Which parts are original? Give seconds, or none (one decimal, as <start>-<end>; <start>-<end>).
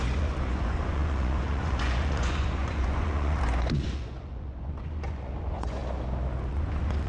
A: 5.8-6.5